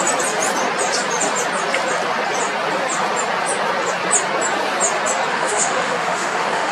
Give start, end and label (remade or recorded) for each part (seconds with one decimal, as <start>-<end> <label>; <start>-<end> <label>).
0.0-5.3 recorded; 5.3-6.7 remade